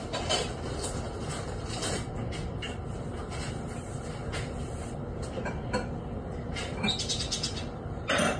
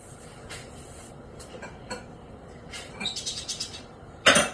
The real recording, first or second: first